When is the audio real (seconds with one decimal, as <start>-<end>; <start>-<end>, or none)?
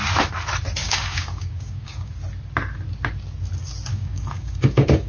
0.0-0.8; 2.1-3.9